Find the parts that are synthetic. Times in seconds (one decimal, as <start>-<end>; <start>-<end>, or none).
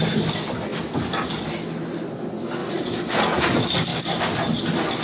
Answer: none